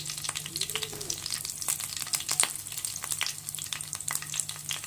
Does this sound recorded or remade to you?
recorded